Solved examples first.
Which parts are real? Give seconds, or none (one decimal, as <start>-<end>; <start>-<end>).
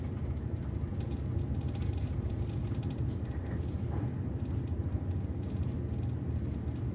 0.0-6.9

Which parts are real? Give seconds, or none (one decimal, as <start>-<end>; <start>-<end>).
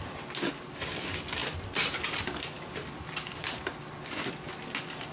0.0-5.1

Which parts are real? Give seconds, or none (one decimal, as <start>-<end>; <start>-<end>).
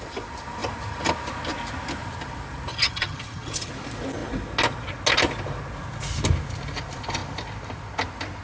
0.0-2.7; 3.7-8.4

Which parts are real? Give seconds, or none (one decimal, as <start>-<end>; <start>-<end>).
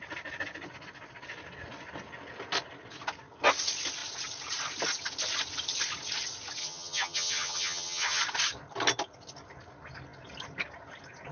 0.0-6.6; 8.2-11.3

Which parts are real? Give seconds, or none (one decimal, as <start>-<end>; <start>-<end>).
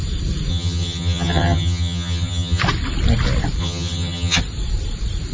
0.0-0.5; 2.6-3.6; 4.4-5.3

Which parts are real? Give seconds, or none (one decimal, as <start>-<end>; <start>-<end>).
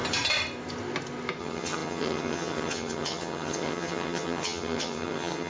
0.0-1.4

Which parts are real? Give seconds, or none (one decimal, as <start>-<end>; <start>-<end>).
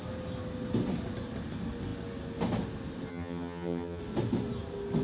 0.0-3.1; 4.0-5.0